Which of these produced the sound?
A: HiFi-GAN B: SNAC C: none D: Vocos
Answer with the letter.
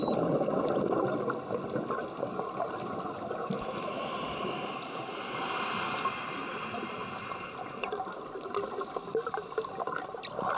C